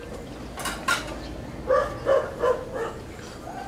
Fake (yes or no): no